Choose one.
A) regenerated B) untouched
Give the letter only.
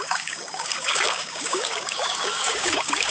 A